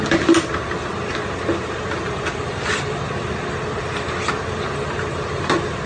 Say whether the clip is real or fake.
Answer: real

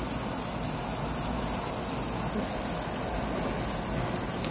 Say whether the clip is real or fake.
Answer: real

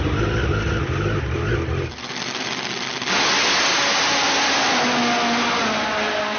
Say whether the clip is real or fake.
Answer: real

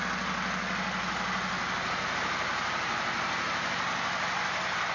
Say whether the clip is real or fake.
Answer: real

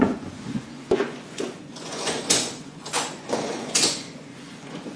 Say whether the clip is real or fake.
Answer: fake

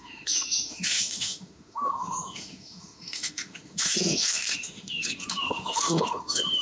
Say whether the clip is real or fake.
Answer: fake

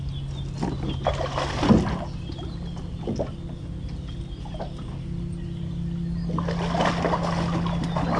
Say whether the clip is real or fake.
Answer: real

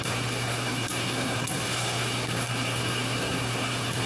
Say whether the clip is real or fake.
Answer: fake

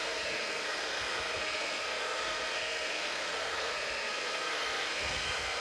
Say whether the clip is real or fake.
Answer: fake